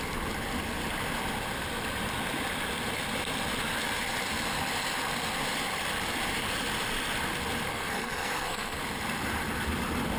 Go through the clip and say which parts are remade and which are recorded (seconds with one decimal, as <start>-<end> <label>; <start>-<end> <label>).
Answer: 0.0-7.7 recorded; 7.7-8.8 remade; 8.8-10.2 recorded

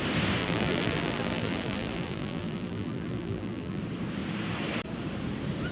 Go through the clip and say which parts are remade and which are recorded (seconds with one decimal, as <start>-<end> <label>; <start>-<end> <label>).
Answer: 0.0-0.4 recorded; 0.4-3.8 remade; 3.8-5.7 recorded

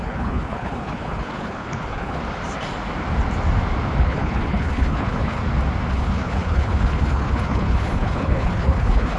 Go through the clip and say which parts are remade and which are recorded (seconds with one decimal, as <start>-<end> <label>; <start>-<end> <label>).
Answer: 0.0-2.2 remade; 2.2-4.0 recorded; 4.0-5.4 remade; 5.4-5.9 recorded; 5.9-9.2 remade

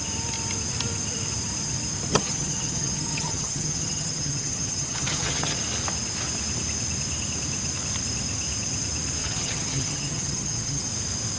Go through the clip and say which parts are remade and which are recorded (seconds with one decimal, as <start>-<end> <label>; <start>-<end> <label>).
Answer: 0.0-2.1 recorded; 2.1-5.6 remade; 5.6-9.2 recorded; 9.2-10.9 remade; 10.9-11.4 recorded